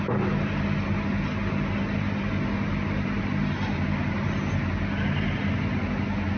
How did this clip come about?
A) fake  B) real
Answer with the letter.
B